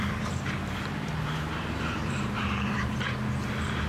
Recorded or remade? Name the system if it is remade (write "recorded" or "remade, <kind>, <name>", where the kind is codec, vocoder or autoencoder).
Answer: remade, vocoder, BigVGAN v2